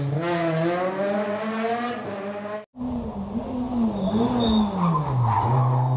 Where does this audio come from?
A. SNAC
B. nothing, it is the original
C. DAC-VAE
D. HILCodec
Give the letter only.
B